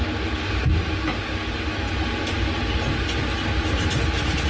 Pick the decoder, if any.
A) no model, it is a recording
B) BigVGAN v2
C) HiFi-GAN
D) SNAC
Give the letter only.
A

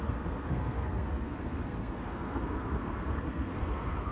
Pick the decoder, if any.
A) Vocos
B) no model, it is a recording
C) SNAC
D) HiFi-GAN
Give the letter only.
C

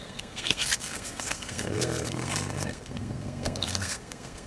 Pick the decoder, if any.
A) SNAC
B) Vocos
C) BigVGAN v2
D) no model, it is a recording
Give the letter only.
A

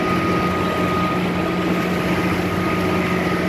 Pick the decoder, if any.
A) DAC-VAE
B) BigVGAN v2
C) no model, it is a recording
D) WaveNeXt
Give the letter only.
C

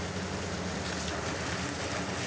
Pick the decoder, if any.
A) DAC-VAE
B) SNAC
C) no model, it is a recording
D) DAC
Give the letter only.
C